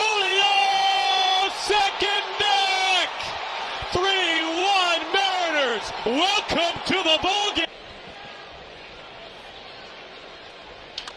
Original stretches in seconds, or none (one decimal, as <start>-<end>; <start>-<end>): 4.6-5.1